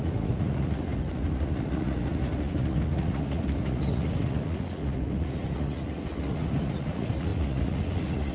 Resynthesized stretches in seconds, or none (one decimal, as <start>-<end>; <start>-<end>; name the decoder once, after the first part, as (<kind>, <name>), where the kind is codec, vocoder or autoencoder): 0.0-8.3 (vocoder, Vocos)